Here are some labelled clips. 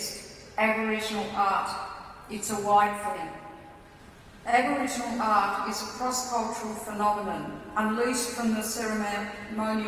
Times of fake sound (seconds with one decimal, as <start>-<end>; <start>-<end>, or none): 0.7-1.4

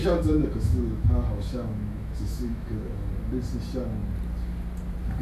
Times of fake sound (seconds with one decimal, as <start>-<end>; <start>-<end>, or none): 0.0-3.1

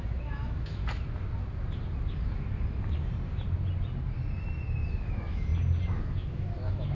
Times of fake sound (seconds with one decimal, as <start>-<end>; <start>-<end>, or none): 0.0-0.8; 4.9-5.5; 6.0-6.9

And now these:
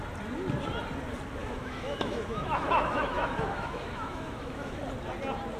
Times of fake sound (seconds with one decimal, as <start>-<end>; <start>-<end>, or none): 1.4-4.8